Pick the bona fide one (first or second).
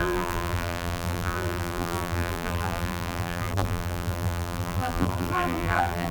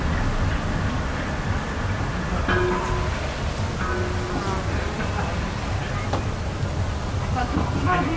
second